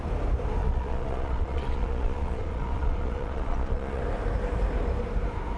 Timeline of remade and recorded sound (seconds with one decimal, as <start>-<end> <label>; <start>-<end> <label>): 0.0-0.6 recorded; 0.6-4.0 remade; 4.0-5.6 recorded